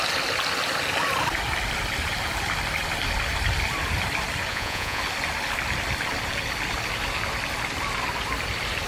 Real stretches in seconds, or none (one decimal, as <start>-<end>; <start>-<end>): 0.0-4.5; 5.0-8.9